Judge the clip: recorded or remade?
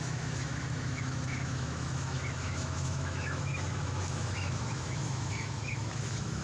remade